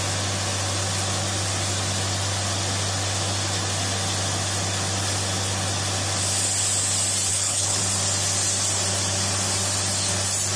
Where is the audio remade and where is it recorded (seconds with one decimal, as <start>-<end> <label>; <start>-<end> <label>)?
0.0-7.3 recorded; 7.3-7.8 remade; 7.8-10.6 recorded